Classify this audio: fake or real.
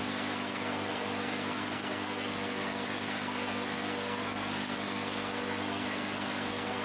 fake